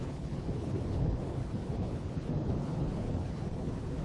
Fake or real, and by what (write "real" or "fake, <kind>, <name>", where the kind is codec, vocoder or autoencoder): fake, codec, HILCodec